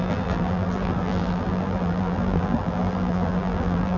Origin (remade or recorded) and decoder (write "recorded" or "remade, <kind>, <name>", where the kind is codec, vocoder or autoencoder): remade, vocoder, BigVGAN v2